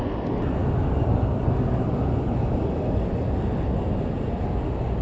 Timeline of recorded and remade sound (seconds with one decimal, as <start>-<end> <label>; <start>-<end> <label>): 0.0-5.0 recorded